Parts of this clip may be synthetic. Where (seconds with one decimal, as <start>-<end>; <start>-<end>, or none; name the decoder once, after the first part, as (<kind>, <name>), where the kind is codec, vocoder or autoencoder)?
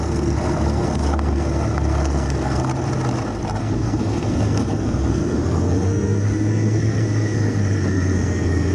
0.0-2.7 (codec, SNAC); 3.6-8.7